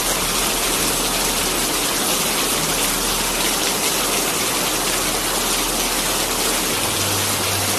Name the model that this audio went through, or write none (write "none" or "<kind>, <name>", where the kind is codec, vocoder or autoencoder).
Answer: none